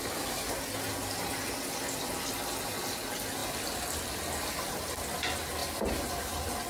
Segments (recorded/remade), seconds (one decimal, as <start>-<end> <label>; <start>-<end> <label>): 0.0-1.0 recorded; 1.0-1.5 remade; 1.5-6.7 recorded